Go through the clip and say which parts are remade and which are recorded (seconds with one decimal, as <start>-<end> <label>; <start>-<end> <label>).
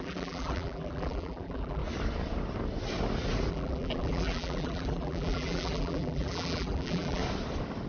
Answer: 0.0-1.8 remade; 1.8-3.5 recorded; 3.5-7.2 remade; 7.2-7.9 recorded